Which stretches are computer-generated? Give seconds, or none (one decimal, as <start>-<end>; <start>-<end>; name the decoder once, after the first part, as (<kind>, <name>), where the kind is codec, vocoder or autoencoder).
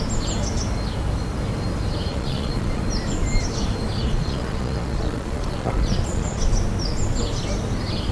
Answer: 2.1-2.8 (vocoder, Vocos); 4.0-6.4